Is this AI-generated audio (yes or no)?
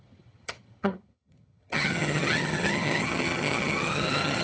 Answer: yes